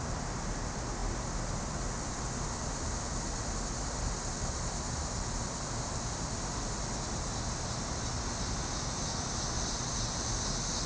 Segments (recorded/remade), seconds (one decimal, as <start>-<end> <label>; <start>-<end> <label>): 0.0-10.9 recorded